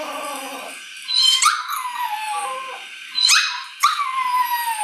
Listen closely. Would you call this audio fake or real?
real